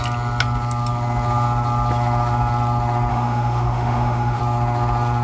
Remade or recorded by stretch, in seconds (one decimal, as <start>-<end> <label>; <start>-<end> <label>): 0.0-3.1 recorded; 3.1-4.4 remade; 4.4-5.2 recorded